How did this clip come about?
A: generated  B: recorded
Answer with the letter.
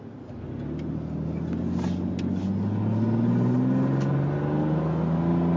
B